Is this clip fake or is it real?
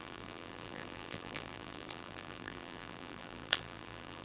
fake